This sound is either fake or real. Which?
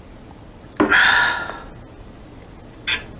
real